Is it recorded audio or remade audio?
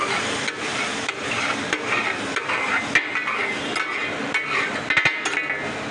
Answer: recorded